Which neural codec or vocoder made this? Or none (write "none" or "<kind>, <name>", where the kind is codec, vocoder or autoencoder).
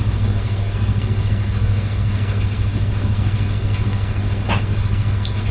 codec, SNAC